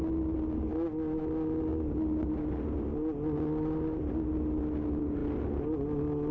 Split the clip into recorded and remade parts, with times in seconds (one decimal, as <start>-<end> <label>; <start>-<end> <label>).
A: 0.0-6.3 recorded